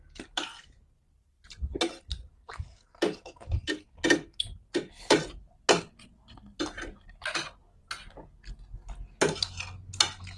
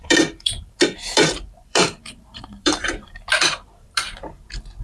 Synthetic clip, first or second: second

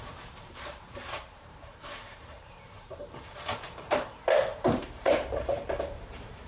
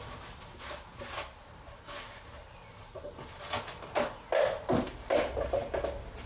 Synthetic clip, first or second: first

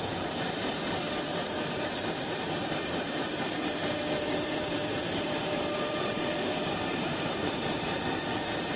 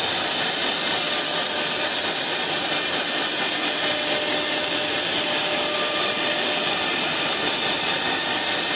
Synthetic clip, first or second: first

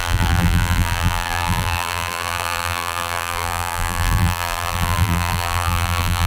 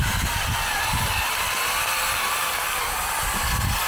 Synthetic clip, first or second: first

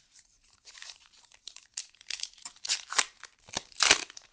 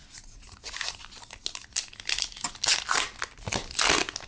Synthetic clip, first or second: first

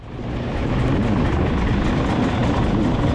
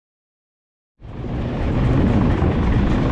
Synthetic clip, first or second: second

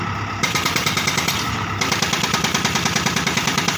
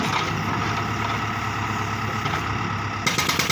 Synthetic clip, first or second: first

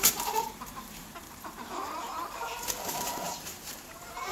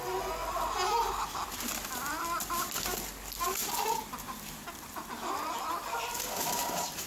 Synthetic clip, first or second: first